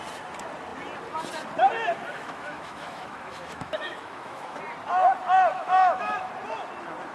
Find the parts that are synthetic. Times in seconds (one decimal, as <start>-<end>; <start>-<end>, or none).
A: 2.1-4.6; 5.5-6.3